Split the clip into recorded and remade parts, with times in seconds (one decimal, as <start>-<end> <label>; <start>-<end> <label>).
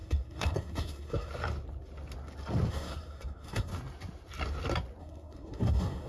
0.0-1.3 remade; 1.3-2.7 recorded; 2.7-3.7 remade; 3.7-5.0 recorded; 5.0-6.1 remade